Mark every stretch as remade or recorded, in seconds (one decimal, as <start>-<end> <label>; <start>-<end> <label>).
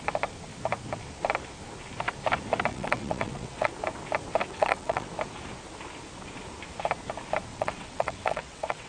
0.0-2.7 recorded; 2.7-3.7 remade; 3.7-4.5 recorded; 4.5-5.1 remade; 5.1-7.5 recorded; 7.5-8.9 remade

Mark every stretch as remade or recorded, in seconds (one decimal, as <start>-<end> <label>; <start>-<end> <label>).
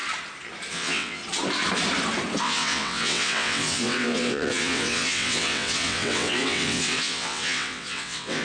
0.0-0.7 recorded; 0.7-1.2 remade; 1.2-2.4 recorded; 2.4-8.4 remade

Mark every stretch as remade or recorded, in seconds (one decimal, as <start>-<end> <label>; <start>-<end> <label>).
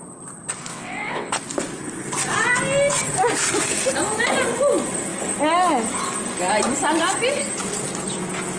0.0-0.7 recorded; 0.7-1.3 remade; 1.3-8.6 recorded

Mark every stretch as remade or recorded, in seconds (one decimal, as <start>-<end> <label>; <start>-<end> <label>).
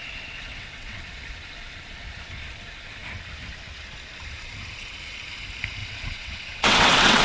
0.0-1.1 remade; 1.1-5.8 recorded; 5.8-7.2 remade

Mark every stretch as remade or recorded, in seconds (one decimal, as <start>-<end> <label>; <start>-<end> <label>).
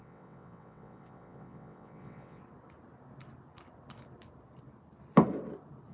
0.0-2.4 remade; 2.4-5.9 recorded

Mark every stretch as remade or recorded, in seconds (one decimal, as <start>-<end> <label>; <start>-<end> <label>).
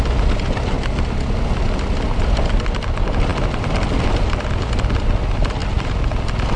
0.0-6.6 recorded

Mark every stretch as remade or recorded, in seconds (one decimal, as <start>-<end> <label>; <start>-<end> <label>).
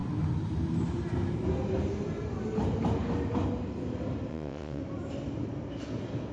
0.0-4.3 recorded; 4.3-4.8 remade; 4.8-6.3 recorded